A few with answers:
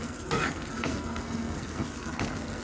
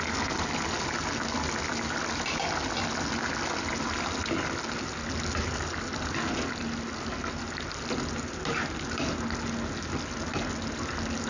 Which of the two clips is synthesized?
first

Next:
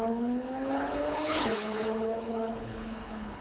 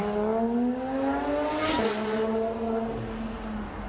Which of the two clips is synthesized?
first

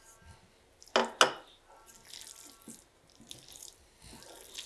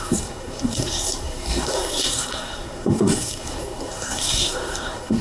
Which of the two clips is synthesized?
second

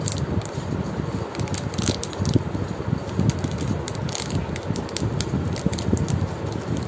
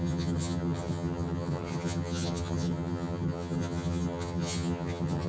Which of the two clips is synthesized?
second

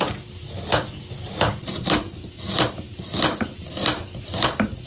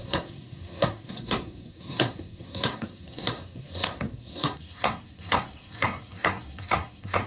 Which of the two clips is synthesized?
second